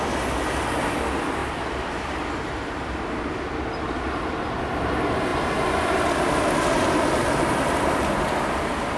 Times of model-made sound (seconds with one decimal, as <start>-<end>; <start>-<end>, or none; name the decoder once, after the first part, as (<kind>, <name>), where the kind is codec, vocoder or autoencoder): 1.4-3.3 (vocoder, BigVGAN v2)